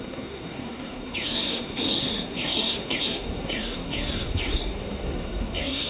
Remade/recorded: remade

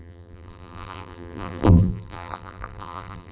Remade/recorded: remade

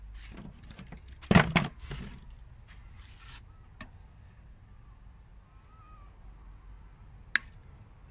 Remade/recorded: recorded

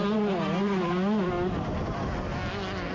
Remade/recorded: recorded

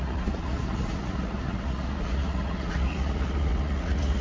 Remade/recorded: remade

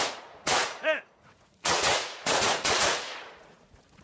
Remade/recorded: remade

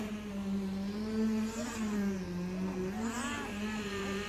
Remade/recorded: recorded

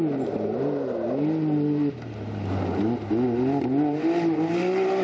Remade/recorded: recorded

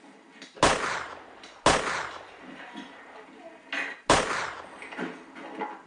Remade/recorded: recorded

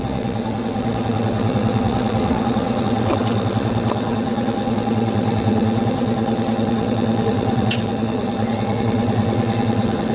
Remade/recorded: remade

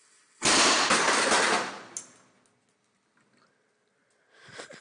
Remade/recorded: recorded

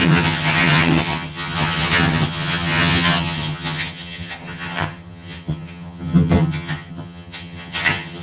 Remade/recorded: remade